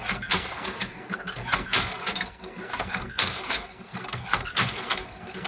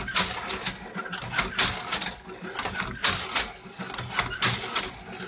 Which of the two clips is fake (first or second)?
first